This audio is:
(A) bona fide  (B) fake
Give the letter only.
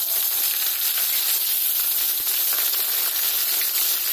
A